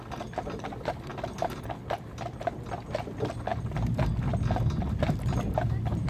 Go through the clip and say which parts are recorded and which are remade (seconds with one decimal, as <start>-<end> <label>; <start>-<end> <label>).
0.0-6.1 recorded